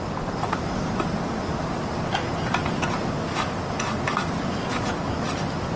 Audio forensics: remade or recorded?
recorded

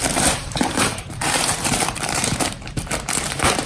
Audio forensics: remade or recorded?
remade